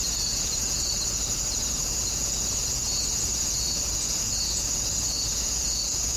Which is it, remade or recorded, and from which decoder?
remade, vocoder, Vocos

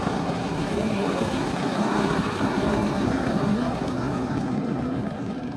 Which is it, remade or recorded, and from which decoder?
remade, codec, SNAC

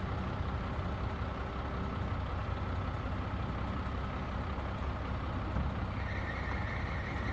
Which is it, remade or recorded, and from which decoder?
recorded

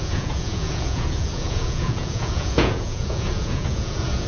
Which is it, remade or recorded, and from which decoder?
remade, vocoder, Vocos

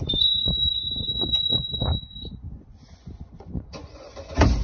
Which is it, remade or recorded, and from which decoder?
remade, vocoder, Vocos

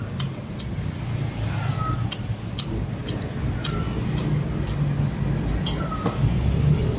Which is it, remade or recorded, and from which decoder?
recorded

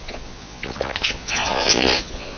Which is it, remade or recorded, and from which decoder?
remade, vocoder, Vocos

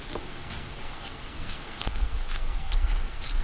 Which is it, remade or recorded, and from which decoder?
remade, codec, SNAC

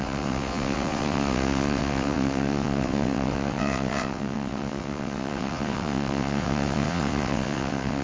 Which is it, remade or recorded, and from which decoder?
remade, vocoder, WaveNeXt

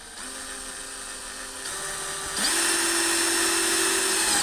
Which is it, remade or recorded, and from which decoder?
recorded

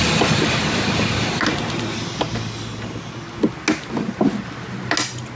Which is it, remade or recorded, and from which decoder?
recorded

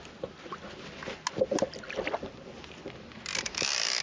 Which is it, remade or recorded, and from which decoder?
recorded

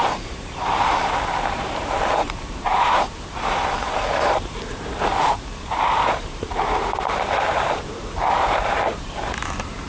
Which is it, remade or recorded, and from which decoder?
remade, vocoder, BigVGAN v2